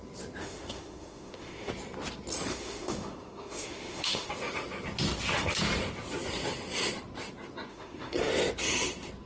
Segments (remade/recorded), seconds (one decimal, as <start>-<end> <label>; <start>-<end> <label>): 0.0-0.4 recorded; 0.4-1.7 remade; 1.7-2.5 recorded; 2.5-4.3 remade; 4.3-7.7 recorded; 7.7-8.3 remade; 8.3-9.3 recorded